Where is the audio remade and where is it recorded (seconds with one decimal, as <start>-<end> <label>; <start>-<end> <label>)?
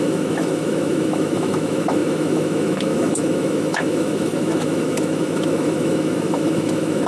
0.0-7.1 remade